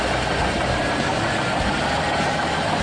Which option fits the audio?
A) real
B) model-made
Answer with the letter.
A